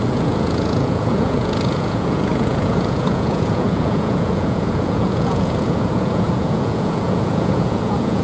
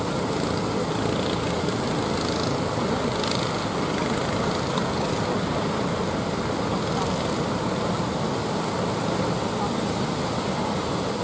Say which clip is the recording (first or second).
second